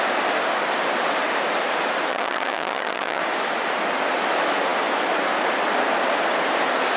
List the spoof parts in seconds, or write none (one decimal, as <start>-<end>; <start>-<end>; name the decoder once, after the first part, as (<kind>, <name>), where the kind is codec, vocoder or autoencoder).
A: 2.1-3.2 (vocoder, HiFi-GAN)